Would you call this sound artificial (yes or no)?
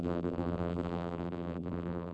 yes